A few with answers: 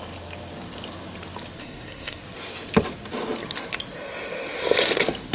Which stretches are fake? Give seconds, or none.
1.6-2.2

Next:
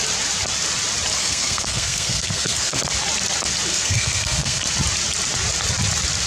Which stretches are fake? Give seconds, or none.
1.2-2.8; 3.7-4.6